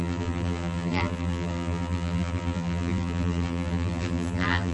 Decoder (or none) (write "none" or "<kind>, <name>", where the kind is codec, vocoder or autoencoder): vocoder, BigVGAN v2